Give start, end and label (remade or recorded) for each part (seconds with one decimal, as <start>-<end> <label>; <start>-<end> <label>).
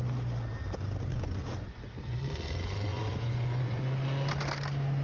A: 0.0-1.1 recorded; 1.1-2.2 remade; 2.2-2.9 recorded; 2.9-3.8 remade; 3.8-5.0 recorded